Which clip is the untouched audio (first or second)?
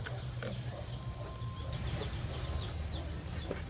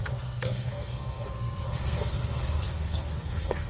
first